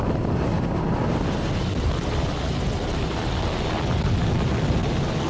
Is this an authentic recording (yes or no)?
yes